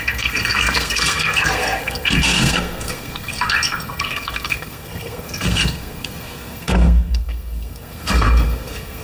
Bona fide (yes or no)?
no